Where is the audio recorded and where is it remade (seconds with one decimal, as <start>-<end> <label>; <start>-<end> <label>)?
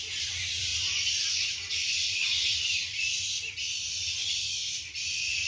0.0-0.7 remade; 0.7-3.6 recorded; 3.6-5.5 remade